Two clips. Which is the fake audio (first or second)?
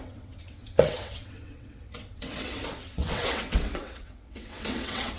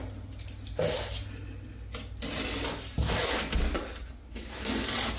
first